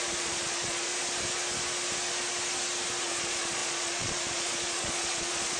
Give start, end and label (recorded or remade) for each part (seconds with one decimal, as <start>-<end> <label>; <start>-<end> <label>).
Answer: 0.0-0.9 remade; 0.9-3.0 recorded; 3.0-5.6 remade